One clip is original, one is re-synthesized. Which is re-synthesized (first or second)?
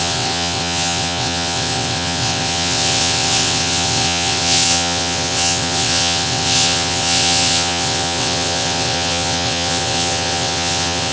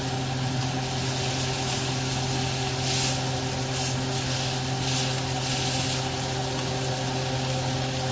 first